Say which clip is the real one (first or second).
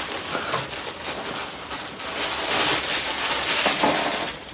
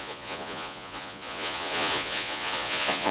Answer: first